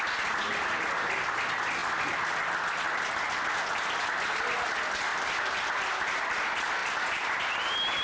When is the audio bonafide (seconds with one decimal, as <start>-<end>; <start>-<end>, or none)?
0.0-8.0